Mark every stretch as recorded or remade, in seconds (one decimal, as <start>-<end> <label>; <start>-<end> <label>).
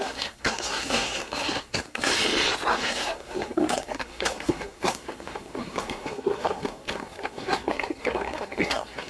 0.0-2.1 remade; 2.1-2.7 recorded; 2.7-9.1 remade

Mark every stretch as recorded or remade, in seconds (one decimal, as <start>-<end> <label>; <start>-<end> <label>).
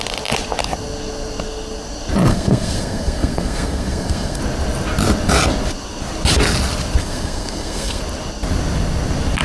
0.0-2.3 recorded; 2.3-4.4 remade; 4.4-7.0 recorded; 7.0-8.0 remade; 8.0-9.4 recorded